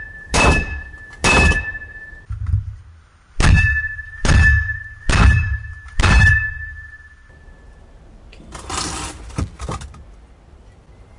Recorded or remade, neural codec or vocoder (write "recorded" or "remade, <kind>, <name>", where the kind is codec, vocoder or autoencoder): remade, vocoder, BigVGAN v2